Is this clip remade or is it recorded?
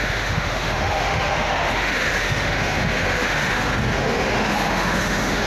remade